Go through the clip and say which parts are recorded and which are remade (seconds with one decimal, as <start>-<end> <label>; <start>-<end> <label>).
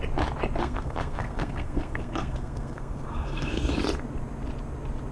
0.0-0.6 recorded; 0.6-3.7 remade; 3.7-5.1 recorded